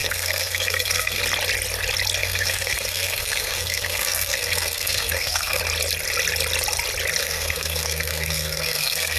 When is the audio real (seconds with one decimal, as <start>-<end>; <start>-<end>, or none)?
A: 1.2-2.2; 5.6-7.2